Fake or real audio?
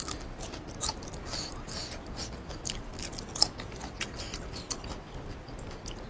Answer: real